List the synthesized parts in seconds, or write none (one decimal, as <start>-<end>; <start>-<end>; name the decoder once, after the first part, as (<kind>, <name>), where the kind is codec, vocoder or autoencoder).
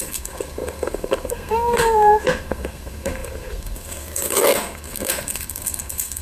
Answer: 0.0-6.2 (codec, SNAC)